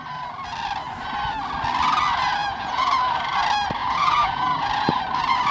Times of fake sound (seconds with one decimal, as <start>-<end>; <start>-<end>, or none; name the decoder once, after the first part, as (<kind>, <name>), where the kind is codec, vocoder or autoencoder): 2.4-3.1 (vocoder, Vocos); 3.8-5.0